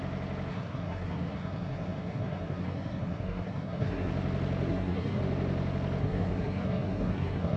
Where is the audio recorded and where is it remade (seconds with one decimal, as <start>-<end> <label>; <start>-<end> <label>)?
0.0-0.5 recorded; 0.5-4.1 remade; 4.1-4.7 recorded; 4.7-5.2 remade; 5.2-6.0 recorded; 6.0-7.6 remade